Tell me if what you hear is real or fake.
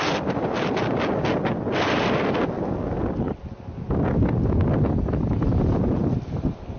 real